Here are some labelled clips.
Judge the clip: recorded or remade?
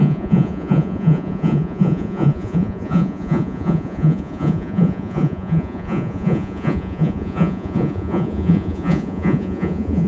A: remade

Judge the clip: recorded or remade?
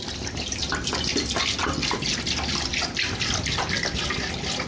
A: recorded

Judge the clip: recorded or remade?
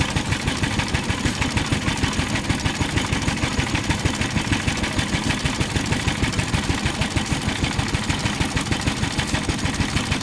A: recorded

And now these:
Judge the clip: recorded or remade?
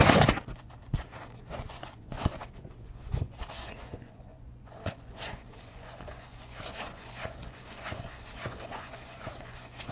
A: remade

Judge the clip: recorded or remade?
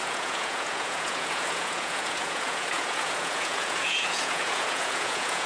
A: remade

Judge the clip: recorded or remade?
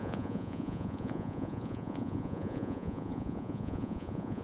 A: remade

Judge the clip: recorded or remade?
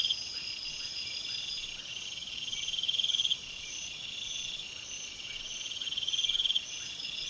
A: remade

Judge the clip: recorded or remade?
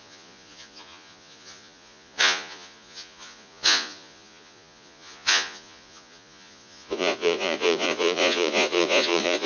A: remade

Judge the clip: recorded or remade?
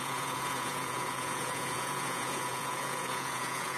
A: remade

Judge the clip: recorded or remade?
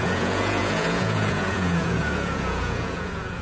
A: remade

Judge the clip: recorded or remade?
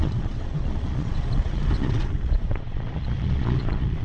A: remade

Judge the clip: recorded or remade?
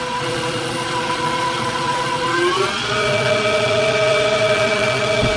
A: remade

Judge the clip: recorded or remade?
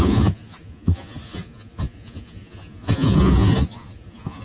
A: remade